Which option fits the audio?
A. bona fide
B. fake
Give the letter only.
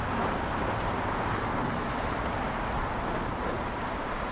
B